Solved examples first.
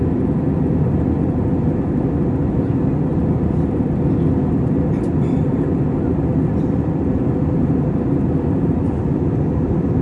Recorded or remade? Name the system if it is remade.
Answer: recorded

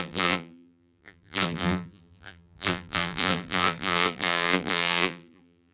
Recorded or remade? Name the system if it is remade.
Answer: remade, vocoder, BigVGAN v2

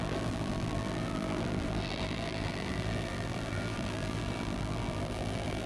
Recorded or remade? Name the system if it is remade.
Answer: remade, vocoder, BigVGAN v2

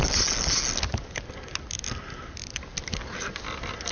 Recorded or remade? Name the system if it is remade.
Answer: recorded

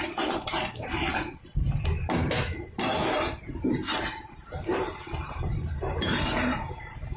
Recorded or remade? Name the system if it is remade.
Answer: remade, vocoder, BigVGAN v2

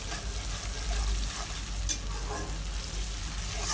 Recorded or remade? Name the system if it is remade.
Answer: recorded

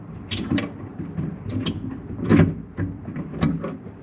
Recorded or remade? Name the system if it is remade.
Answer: remade, vocoder, BigVGAN v2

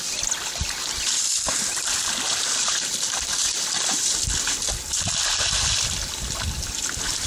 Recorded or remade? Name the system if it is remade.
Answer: recorded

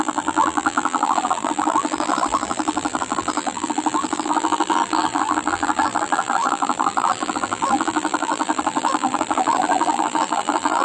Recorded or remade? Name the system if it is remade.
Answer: remade, vocoder, BigVGAN v2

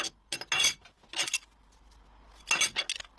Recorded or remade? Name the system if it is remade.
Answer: recorded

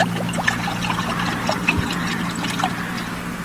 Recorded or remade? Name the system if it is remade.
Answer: recorded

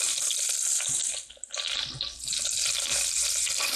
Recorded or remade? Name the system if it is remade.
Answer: remade, vocoder, BigVGAN v2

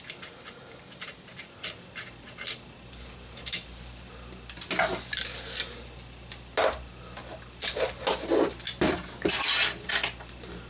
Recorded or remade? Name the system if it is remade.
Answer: recorded